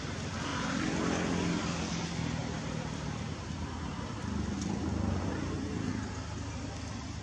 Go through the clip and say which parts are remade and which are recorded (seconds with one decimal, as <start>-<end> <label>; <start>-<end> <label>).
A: 0.0-7.2 recorded